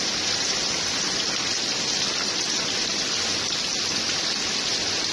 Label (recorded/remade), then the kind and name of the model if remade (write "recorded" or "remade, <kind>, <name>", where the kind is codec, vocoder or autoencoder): recorded